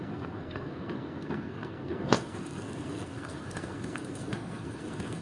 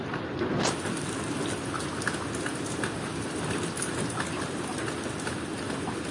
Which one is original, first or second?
second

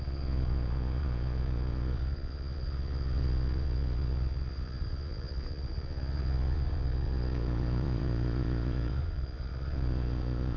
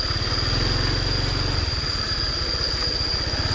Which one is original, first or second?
second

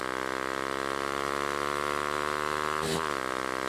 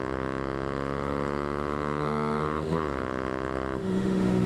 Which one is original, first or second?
first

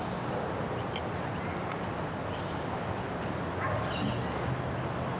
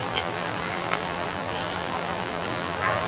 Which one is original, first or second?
first